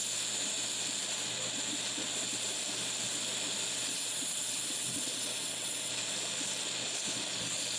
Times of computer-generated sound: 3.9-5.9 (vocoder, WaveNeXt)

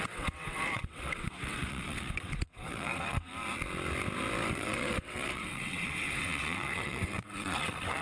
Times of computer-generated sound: 0.0-3.3 (vocoder, WaveNeXt); 4.5-8.0